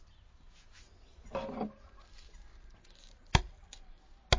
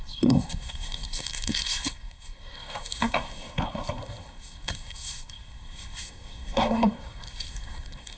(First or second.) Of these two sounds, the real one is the first